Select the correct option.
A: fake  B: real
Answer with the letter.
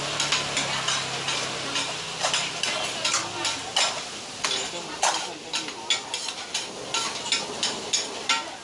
B